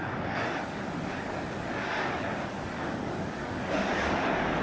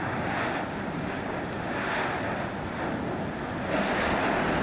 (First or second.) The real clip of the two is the second